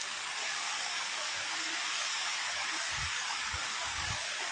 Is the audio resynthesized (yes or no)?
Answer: yes